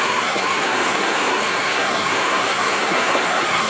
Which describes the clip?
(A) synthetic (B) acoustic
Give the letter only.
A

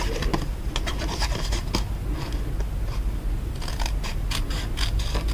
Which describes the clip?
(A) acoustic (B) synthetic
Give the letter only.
A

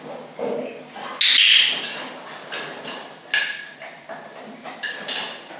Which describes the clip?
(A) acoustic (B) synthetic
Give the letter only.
A